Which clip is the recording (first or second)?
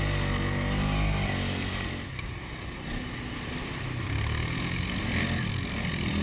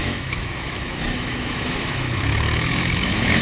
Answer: first